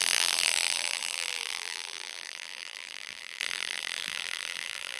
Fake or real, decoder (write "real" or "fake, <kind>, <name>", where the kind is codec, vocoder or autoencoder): fake, vocoder, BigVGAN v2